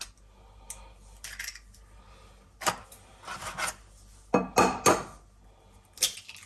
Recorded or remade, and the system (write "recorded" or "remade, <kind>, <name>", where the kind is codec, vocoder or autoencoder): recorded